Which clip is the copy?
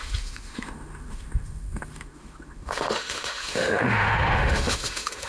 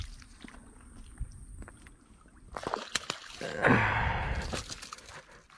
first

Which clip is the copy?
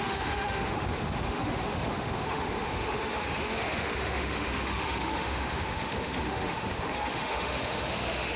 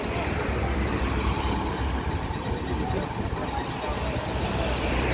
first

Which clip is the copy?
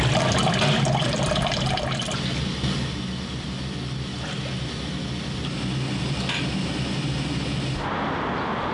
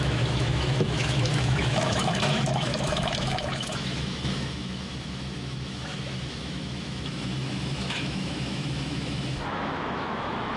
second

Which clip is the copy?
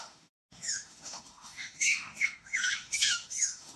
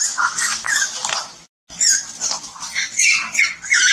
first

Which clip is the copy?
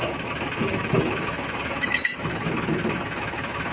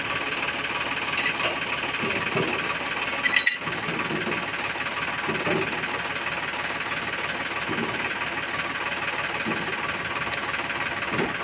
first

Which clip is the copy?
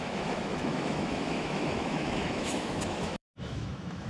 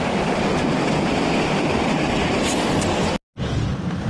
first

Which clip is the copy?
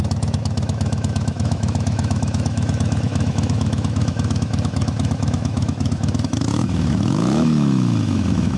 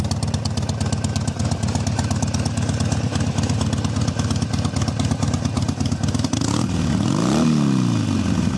first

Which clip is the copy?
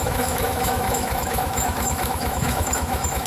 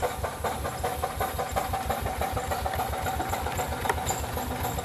first